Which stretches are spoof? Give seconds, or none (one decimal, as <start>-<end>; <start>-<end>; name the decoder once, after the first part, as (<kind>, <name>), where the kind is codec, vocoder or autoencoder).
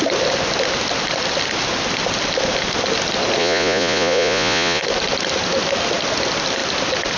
3.4-4.8 (vocoder, Vocos)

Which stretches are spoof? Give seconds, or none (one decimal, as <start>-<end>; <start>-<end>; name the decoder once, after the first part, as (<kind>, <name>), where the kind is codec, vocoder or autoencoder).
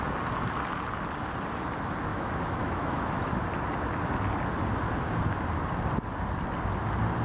2.1-3.3 (autoencoder, DAC-VAE)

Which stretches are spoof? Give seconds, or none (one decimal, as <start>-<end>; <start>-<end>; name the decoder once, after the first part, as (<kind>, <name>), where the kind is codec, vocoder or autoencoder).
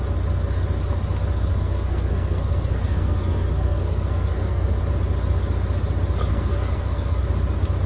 1.5-4.8 (codec, SNAC); 6.3-7.2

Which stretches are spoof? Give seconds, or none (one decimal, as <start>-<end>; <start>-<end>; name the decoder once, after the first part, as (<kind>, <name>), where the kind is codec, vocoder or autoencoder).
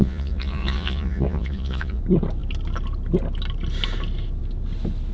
0.0-2.0 (vocoder, Vocos)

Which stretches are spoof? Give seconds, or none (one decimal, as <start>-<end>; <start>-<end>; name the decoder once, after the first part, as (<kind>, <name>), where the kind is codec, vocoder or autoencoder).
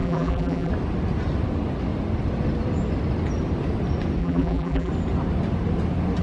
0.0-0.7 (vocoder, BigVGAN v2); 4.2-4.9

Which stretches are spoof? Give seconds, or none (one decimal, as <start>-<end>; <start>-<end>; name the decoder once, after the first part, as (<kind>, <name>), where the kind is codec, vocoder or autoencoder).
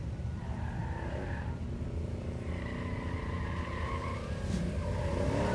0.0-0.8 (vocoder, BigVGAN v2); 4.1-5.5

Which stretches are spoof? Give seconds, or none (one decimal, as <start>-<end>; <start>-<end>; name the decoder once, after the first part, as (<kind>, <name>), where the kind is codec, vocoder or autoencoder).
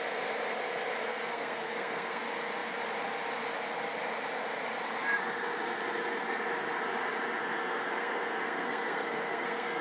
1.1-2.2 (codec, SNAC); 7.4-9.8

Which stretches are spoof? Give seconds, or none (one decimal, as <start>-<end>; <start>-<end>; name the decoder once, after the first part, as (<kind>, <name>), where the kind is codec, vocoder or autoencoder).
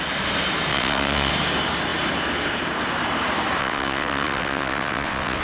0.7-1.3 (vocoder, WaveNeXt); 3.6-5.4